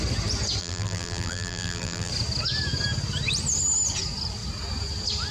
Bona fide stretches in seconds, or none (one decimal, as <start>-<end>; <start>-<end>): 0.0-0.6; 2.1-5.3